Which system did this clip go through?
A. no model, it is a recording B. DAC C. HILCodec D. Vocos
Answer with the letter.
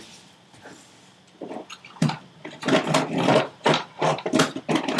A